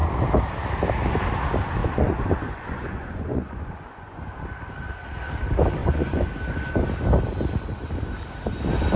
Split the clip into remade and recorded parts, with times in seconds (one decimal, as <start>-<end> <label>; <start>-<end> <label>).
0.0-1.8 recorded; 1.8-4.2 remade; 4.2-5.8 recorded; 5.8-6.3 remade; 6.3-9.0 recorded